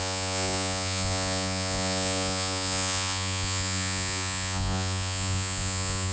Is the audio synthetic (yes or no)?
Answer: yes